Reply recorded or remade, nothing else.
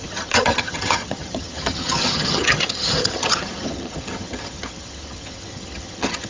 remade